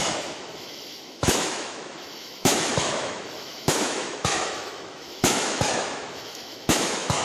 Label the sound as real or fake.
fake